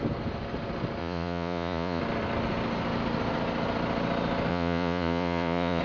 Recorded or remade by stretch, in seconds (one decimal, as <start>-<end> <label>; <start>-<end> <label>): 0.0-1.0 recorded; 1.0-2.0 remade; 2.0-4.5 recorded; 4.5-5.8 remade